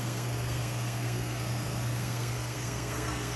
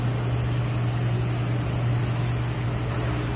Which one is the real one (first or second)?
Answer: second